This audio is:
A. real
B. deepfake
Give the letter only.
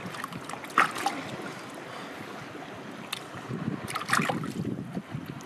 A